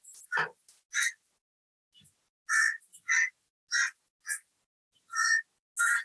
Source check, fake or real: real